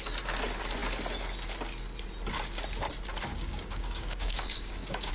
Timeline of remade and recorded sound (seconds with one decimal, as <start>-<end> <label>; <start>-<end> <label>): 0.0-3.3 recorded; 3.3-5.1 remade

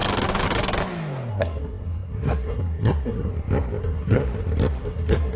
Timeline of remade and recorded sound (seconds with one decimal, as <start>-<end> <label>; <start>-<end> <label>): 0.0-1.3 recorded; 1.3-3.3 remade; 3.3-3.8 recorded; 3.8-4.2 remade; 4.2-4.8 recorded; 4.8-5.4 remade

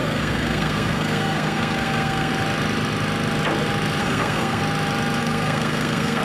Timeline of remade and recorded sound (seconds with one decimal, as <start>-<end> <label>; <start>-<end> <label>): 0.0-2.3 remade; 2.3-4.0 recorded; 4.0-4.6 remade; 4.6-5.2 recorded; 5.2-6.2 remade

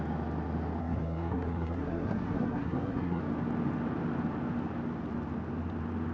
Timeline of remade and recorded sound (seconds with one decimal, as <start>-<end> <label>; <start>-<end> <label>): 0.0-0.8 recorded; 0.8-3.2 remade; 3.2-6.1 recorded

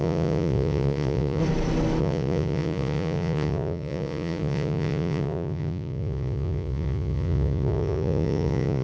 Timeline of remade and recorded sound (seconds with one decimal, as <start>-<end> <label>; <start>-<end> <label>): 0.0-1.4 remade; 1.4-2.0 recorded; 2.0-8.8 remade

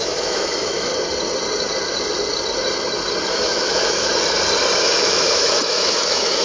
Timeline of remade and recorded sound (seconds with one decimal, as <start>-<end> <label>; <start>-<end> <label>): 0.0-0.9 remade; 0.9-3.3 recorded; 3.3-4.1 remade; 4.1-4.8 recorded; 4.8-6.4 remade

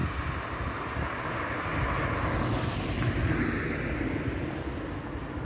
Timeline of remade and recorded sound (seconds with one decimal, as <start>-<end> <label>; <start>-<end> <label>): 0.0-5.4 recorded